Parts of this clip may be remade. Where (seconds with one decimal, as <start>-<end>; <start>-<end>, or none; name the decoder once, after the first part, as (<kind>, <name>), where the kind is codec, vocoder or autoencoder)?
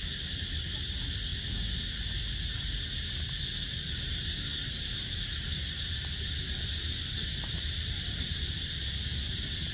none